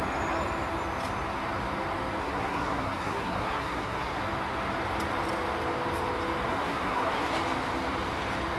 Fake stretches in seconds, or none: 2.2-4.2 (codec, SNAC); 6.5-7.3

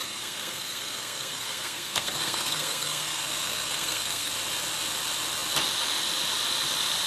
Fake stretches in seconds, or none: 0.0-4.3 (codec, SNAC)

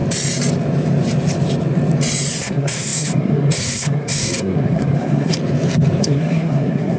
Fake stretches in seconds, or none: 2.4-5.4 (codec, SNAC); 6.0-7.0

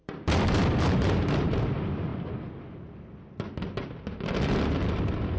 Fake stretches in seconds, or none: 0.0-2.1 (vocoder, BigVGAN v2)

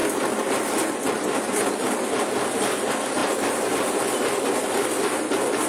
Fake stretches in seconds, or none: none

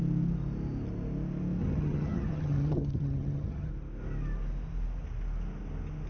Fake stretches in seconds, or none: 1.6-3.7 (vocoder, HiFi-GAN)

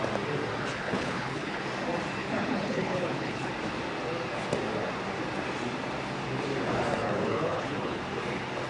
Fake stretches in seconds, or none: 0.7-1.6 (codec, HILCodec); 2.2-3.5; 7.0-8.0